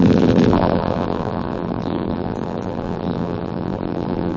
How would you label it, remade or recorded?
remade